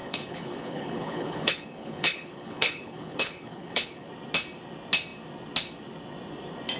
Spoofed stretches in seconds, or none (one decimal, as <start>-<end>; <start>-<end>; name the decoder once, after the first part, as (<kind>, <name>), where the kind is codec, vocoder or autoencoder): 0.0-4.1 (codec, HILCodec)